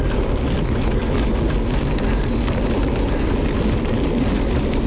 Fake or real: real